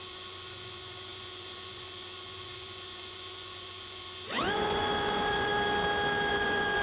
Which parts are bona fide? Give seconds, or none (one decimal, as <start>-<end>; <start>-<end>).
5.5-6.3

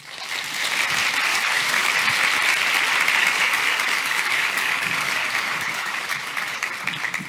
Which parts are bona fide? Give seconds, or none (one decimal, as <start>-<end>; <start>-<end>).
0.0-1.3; 1.9-3.2; 6.7-7.3

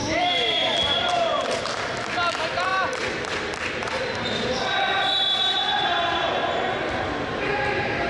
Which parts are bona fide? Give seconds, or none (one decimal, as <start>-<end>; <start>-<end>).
1.6-2.7; 7.1-8.1

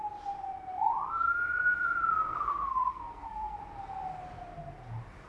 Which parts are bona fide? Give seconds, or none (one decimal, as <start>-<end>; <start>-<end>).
0.0-2.2; 3.6-5.3

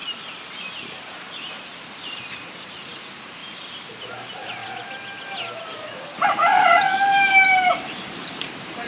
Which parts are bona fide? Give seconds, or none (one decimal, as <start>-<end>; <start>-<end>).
3.4-4.0; 4.6-5.6

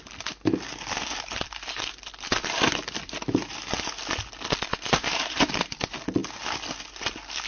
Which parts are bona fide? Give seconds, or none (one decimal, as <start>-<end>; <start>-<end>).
0.0-4.7; 5.8-7.5